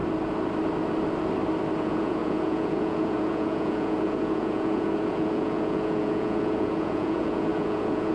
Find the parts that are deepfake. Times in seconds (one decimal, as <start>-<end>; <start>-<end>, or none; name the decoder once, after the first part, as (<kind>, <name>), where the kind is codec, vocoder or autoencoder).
1.8-8.1 (vocoder, Vocos)